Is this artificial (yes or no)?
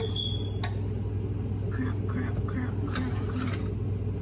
no